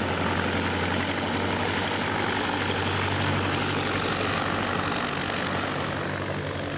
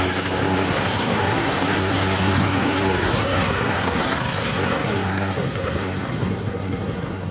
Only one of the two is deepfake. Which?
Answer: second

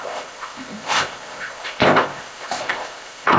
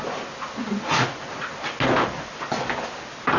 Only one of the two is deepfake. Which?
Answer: first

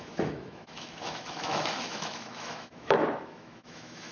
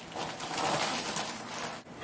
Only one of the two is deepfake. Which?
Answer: first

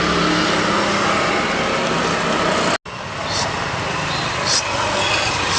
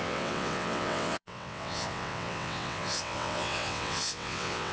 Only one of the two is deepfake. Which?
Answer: second